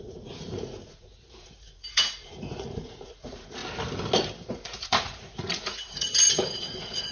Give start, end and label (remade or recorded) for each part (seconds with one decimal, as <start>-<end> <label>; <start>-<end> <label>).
0.0-3.6 remade; 3.6-4.5 recorded; 4.5-7.1 remade